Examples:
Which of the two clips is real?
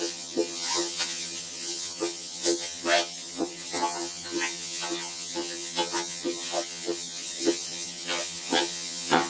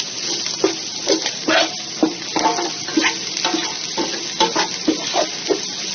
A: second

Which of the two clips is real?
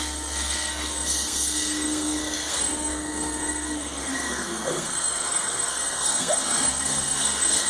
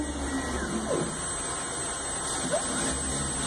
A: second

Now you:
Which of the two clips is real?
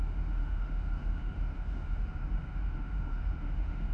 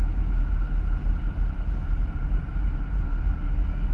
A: second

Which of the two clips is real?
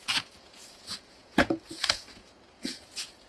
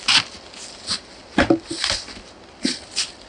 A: second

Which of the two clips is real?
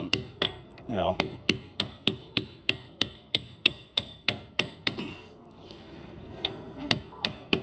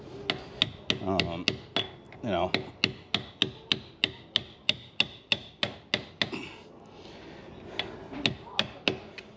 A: second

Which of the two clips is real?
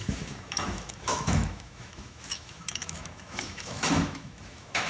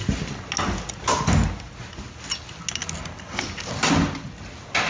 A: second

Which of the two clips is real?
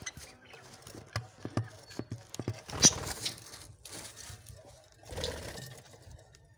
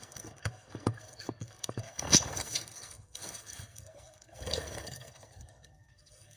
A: first